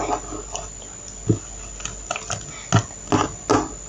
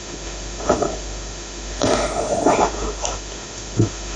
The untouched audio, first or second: first